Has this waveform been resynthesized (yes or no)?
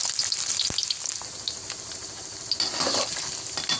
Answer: no